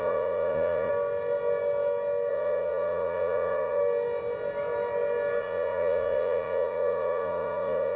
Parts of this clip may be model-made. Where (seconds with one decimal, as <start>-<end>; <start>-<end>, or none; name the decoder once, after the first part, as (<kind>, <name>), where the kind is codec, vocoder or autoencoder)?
0.0-0.9 (vocoder, Vocos); 2.3-3.8; 5.4-8.0